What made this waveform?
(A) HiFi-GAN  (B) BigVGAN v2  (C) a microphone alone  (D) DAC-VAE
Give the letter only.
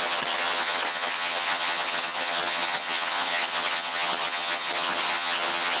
A